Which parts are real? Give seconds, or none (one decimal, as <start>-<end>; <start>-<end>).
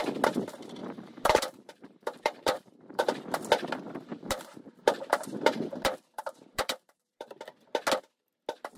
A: 0.0-0.8; 3.2-4.1; 7.4-8.8